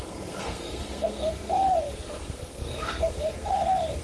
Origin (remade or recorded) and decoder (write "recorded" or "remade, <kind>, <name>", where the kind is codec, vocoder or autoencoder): remade, codec, SNAC